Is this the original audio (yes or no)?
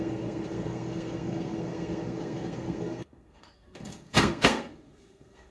no